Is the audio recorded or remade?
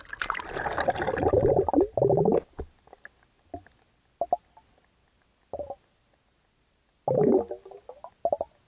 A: recorded